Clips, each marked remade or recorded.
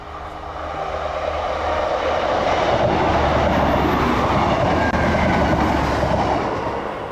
recorded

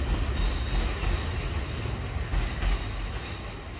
recorded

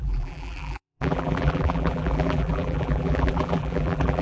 remade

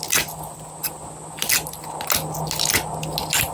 recorded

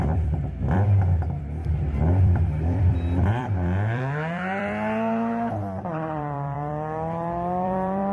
remade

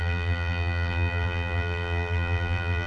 remade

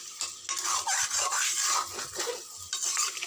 recorded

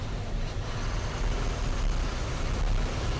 recorded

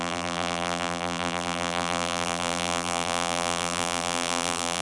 remade